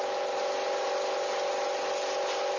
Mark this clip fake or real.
real